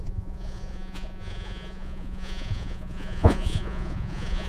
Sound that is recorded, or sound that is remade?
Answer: remade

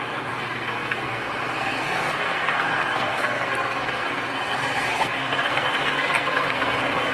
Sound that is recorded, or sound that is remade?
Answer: remade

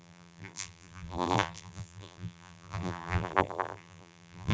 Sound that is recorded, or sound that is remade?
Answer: remade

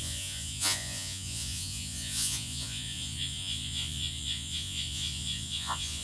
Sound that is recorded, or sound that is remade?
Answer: remade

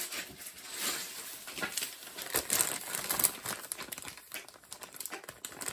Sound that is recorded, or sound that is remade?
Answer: recorded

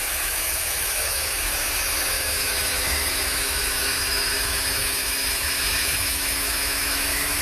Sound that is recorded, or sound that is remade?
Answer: remade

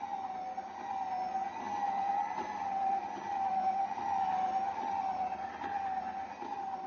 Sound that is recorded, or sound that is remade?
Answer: recorded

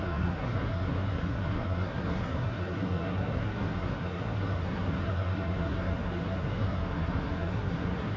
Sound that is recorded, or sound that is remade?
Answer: remade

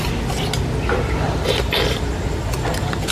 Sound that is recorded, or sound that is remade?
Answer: recorded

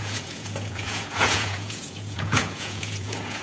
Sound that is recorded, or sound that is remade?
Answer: remade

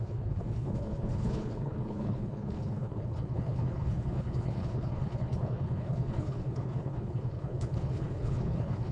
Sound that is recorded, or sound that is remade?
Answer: remade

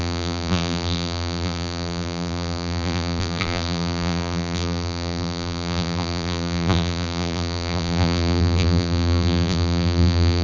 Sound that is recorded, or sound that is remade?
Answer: remade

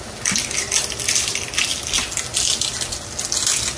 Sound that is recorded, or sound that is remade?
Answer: recorded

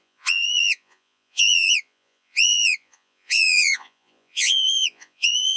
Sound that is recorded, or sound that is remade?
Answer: remade